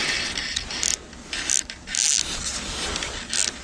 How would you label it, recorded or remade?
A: recorded